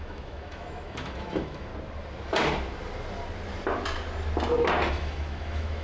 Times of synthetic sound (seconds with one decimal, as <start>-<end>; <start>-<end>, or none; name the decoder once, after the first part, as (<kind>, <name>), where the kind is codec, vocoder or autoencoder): 0.0-1.7 (autoencoder, DAC-VAE); 4.9-5.8